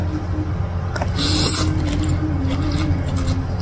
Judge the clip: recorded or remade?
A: recorded